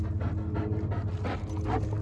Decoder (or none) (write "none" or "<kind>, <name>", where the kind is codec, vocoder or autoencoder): none